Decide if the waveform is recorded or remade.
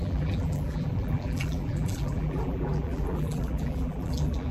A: remade